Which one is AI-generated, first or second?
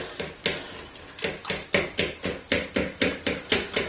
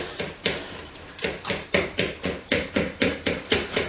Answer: second